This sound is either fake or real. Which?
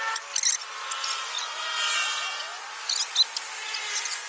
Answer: real